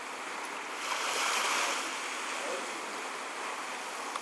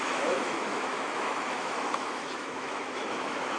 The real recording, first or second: first